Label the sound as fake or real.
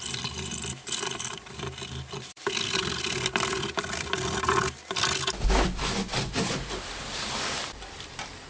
fake